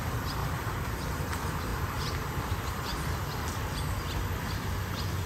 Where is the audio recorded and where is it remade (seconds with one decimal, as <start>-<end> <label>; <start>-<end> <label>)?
0.0-0.4 recorded; 0.4-1.0 remade; 1.0-1.7 recorded; 1.7-2.4 remade; 2.4-5.3 recorded